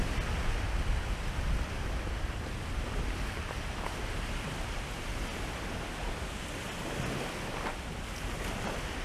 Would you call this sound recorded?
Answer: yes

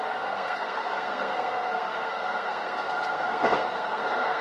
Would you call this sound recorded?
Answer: no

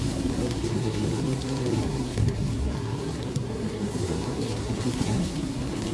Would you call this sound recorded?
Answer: no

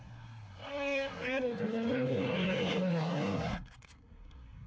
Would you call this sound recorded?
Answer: no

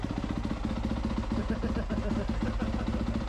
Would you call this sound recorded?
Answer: yes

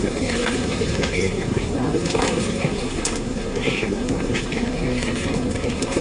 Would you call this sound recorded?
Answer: no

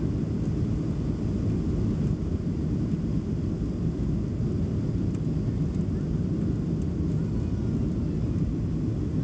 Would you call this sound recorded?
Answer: yes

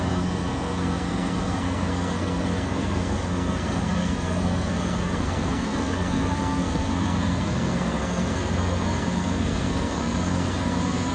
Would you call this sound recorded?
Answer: no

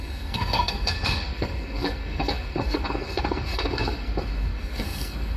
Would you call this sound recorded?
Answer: no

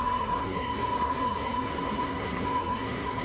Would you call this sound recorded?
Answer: no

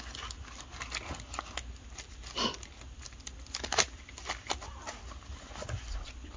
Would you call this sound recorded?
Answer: yes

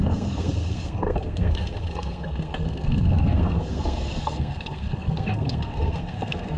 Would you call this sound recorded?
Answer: no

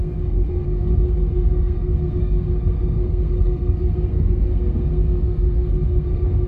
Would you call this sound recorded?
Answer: no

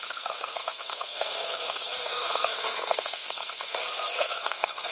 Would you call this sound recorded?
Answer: no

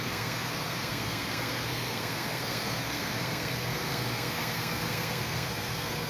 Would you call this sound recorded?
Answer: no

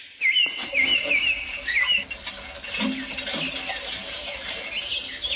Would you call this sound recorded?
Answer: yes